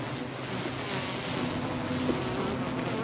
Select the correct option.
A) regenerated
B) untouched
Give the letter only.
B